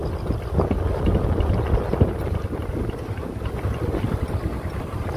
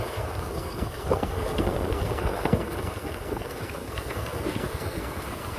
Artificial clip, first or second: second